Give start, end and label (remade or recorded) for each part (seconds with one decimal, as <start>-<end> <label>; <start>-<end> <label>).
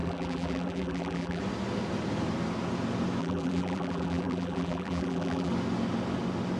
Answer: 0.0-1.4 remade; 1.4-3.2 recorded; 3.2-5.5 remade; 5.5-6.6 recorded